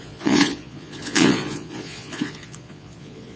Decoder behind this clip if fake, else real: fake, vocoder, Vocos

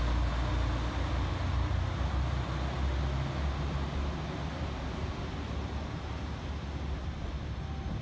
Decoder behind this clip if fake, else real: real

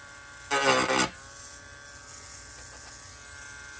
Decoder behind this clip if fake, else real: real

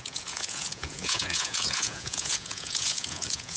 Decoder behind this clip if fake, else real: fake, vocoder, Vocos